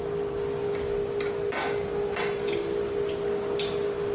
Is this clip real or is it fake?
real